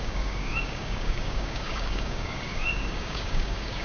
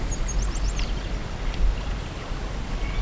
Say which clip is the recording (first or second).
second